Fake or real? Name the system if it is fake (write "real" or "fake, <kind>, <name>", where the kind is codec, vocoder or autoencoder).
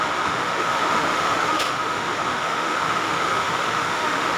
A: fake, autoencoder, DAC-VAE